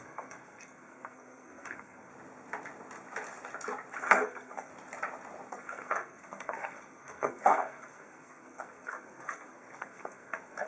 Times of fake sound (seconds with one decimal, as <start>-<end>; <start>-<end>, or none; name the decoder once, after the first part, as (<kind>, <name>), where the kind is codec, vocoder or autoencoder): 0.0-2.1 (codec, SNAC); 4.0-4.7; 5.5-10.7